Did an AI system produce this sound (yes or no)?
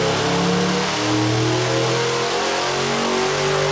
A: no